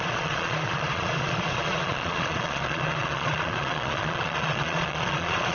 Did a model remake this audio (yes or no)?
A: yes